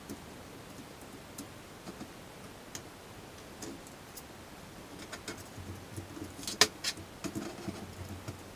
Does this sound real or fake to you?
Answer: real